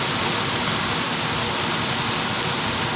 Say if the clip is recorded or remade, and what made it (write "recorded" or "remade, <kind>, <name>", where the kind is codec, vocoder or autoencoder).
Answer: recorded